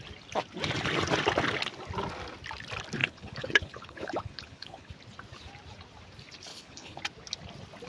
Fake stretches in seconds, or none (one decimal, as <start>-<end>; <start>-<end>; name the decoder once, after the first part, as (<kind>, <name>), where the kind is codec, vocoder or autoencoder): 3.0-4.9 (codec, HILCodec); 6.5-7.0